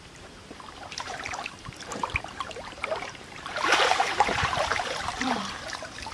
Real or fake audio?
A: fake